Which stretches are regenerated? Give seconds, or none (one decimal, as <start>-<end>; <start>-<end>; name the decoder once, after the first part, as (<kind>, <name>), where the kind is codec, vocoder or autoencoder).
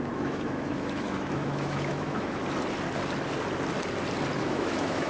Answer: 0.0-2.4 (autoencoder, DAC-VAE); 4.4-5.1